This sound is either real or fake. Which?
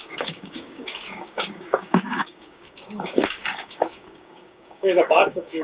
fake